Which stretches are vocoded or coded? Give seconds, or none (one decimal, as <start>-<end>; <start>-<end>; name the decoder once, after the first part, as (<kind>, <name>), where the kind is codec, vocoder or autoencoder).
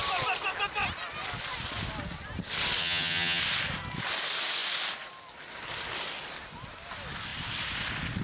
2.8-3.4 (vocoder, HiFi-GAN)